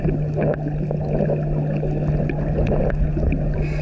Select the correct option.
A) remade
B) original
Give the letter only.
B